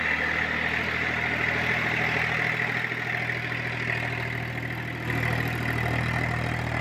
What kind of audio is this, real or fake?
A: real